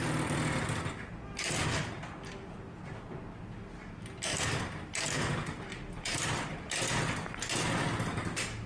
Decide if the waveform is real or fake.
real